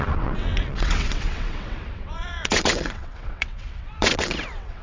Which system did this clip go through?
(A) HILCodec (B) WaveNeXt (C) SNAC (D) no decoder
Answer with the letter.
B